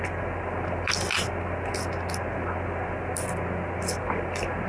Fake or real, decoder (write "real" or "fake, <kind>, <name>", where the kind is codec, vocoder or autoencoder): real